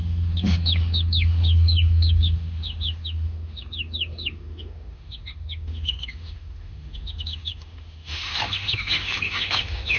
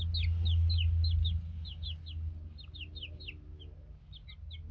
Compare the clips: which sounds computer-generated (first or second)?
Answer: first